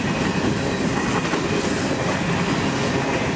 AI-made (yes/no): no